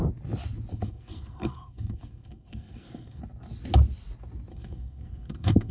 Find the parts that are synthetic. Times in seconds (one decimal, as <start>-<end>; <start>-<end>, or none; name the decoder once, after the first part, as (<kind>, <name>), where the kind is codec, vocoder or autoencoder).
0.7-3.2 (codec, SNAC); 4.5-5.7